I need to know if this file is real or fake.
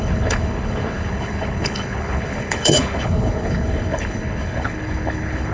fake